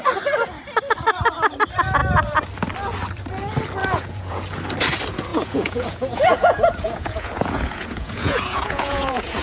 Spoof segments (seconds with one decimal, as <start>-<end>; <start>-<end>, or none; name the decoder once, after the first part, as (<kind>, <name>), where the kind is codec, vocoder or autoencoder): 3.8-4.4 (vocoder, Vocos); 5.3-9.4